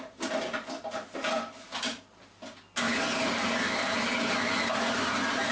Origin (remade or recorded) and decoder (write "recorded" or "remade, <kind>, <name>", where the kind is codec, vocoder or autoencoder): recorded